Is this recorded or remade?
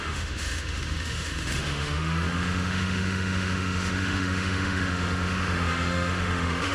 remade